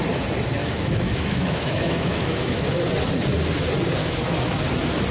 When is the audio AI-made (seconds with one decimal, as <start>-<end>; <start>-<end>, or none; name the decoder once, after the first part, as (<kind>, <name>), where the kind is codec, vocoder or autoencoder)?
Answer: 0.6-2.9 (autoencoder, DAC-VAE); 4.0-4.6